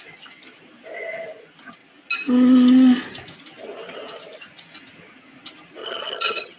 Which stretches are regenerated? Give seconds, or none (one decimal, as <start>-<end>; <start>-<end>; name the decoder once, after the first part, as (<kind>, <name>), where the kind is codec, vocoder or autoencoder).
5.8-6.6 (vocoder, HiFi-GAN)